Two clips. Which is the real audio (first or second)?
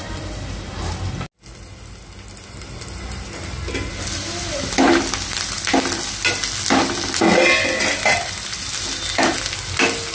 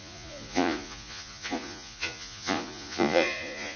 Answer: first